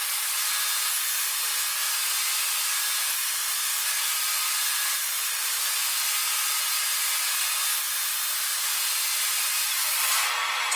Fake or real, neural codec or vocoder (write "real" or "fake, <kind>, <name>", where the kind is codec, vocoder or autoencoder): real